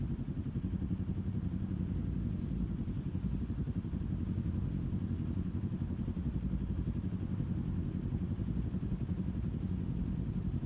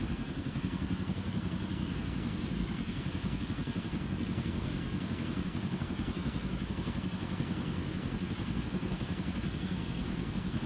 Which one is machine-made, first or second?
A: second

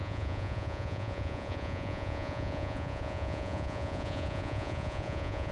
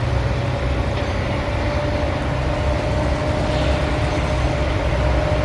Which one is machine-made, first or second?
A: first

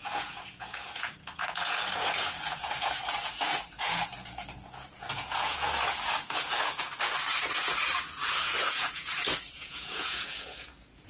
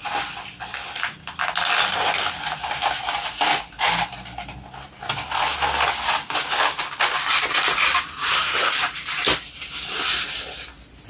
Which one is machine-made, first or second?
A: first